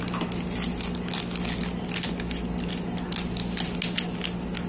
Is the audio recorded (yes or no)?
yes